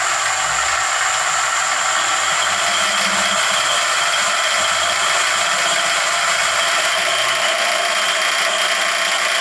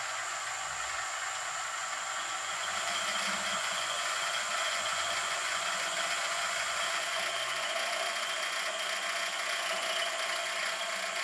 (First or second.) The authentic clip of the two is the first